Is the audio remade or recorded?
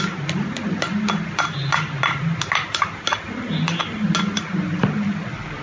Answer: recorded